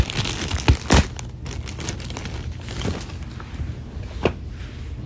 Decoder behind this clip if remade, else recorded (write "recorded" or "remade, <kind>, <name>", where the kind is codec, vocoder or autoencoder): recorded